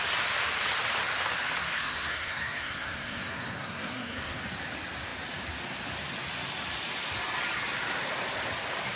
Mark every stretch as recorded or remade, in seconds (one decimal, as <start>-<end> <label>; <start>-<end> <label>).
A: 0.0-1.8 recorded; 1.8-4.4 remade; 4.4-9.0 recorded